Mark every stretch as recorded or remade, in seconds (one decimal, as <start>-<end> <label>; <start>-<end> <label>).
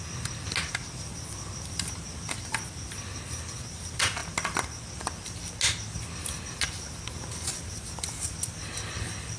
0.0-9.4 recorded